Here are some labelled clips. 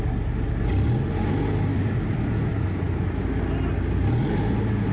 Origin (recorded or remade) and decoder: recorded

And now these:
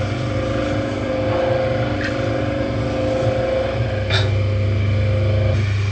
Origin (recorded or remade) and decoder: recorded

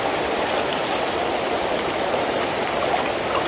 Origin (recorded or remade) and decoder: recorded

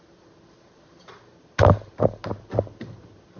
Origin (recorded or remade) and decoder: recorded